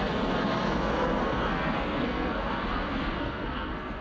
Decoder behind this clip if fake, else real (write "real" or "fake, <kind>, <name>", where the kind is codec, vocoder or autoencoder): fake, codec, SNAC